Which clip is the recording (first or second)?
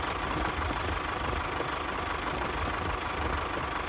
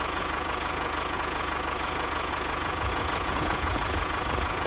first